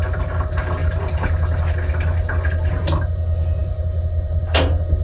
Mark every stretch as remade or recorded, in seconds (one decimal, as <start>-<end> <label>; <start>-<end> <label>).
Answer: 0.0-0.8 recorded; 0.8-1.6 remade; 1.6-5.0 recorded